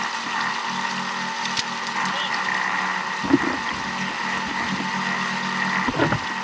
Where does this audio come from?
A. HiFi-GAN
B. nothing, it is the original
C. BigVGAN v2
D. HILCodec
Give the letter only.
B